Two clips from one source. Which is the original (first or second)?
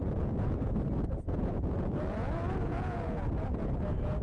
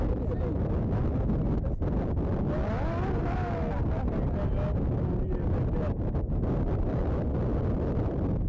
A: second